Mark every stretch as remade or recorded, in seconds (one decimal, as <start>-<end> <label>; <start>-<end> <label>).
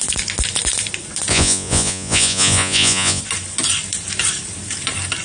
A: 0.0-1.3 recorded; 1.3-3.2 remade; 3.2-5.2 recorded